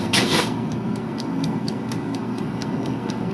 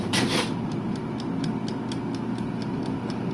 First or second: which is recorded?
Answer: second